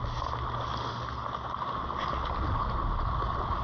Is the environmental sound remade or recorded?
recorded